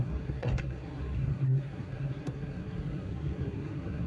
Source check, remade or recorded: remade